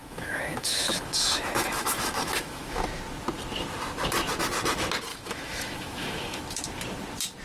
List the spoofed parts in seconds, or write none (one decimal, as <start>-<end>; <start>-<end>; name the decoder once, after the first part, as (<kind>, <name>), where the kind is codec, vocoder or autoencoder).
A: 0.0-2.8 (autoencoder, DAC-VAE); 5.1-6.4